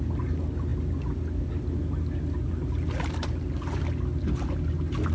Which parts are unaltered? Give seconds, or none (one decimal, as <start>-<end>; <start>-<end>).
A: 0.0-5.1